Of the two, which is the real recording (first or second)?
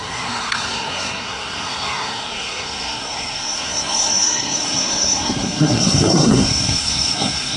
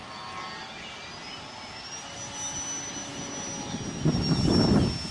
second